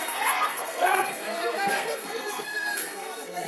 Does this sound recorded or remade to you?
remade